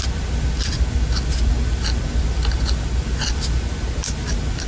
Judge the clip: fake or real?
real